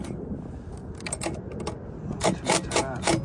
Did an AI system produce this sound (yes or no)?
no